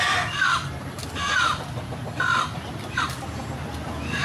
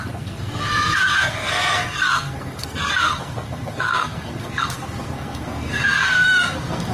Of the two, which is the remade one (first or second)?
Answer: second